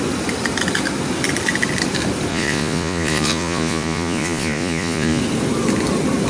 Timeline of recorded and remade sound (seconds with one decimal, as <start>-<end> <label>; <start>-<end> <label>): 0.0-2.3 recorded; 2.3-5.2 remade; 5.2-6.3 recorded